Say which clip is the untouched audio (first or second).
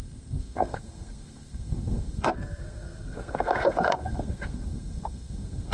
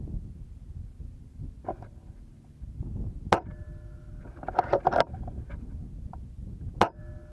second